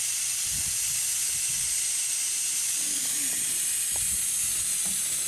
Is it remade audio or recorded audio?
recorded